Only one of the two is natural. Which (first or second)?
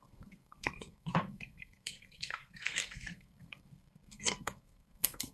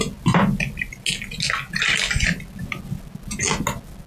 second